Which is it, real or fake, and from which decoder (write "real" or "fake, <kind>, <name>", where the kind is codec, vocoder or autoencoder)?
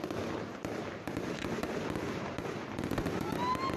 real